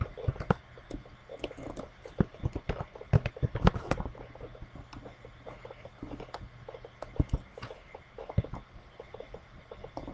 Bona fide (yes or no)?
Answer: yes